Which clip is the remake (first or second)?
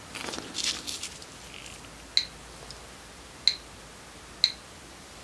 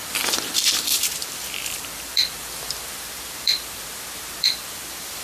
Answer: second